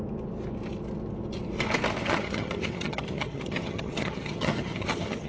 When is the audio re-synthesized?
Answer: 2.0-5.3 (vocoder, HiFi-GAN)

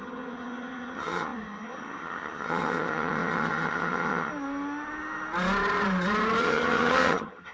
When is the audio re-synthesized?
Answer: 0.0-4.3 (vocoder, HiFi-GAN); 6.4-7.5

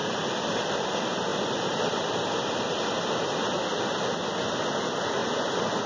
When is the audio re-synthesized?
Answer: none

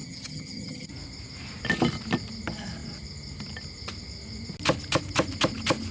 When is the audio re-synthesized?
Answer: 0.0-0.9 (vocoder, HiFi-GAN)

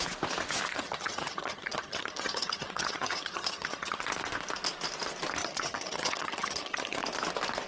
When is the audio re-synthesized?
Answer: 0.7-4.0 (vocoder, HiFi-GAN); 5.4-7.0